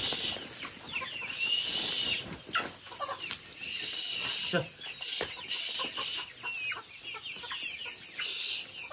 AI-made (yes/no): no